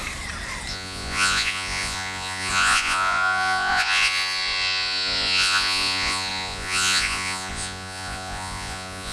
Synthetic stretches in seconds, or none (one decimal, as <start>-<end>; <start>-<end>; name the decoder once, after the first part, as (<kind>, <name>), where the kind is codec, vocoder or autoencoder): 0.7-9.1 (vocoder, Vocos)